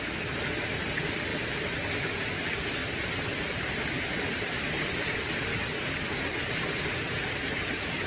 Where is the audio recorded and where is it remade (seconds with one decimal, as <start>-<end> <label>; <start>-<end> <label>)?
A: 0.0-5.5 recorded; 5.5-6.5 remade; 6.5-8.1 recorded